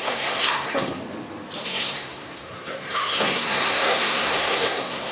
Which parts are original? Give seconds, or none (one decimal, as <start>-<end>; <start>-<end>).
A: 1.0-1.6